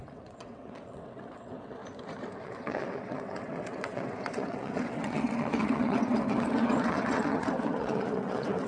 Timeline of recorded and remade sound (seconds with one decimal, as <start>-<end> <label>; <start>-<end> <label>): 0.0-1.8 remade; 1.8-2.4 recorded; 2.4-8.7 remade